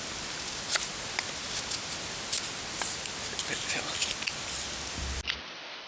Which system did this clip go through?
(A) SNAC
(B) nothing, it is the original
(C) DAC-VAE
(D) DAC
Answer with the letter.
B